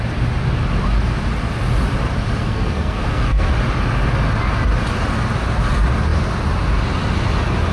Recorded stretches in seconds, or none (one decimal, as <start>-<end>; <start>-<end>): 0.0-2.4; 3.5-7.7